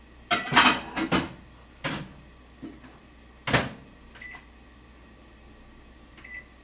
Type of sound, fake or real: real